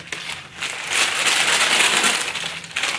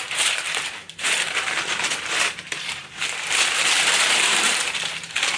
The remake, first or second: second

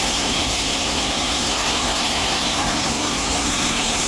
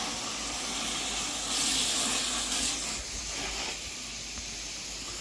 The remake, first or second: first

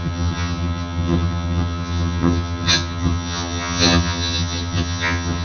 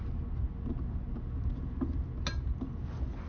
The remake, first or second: first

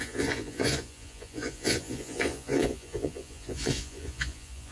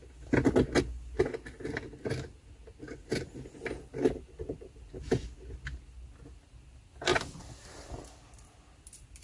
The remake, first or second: first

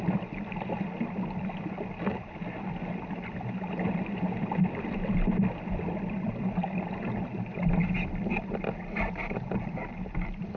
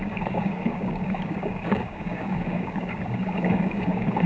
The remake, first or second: second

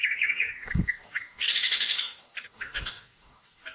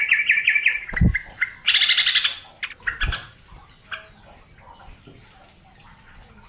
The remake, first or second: first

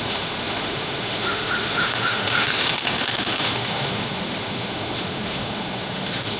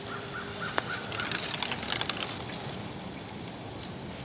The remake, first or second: first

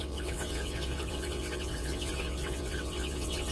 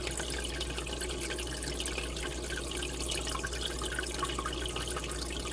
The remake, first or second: first